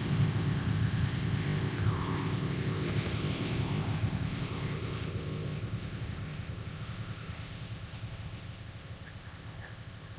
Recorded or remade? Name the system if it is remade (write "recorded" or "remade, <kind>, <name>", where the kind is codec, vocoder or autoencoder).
remade, codec, ZipCodec